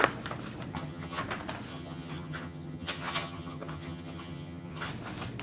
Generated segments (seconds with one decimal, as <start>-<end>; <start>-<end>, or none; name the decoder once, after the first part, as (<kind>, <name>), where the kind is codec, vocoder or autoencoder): 0.7-1.2 (vocoder, HiFi-GAN); 1.7-4.9